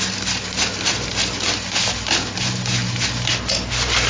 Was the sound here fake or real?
real